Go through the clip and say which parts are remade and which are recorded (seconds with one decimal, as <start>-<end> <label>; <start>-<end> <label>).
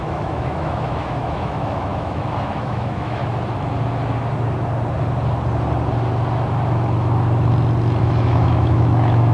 0.0-3.2 remade; 3.2-8.0 recorded; 8.0-9.3 remade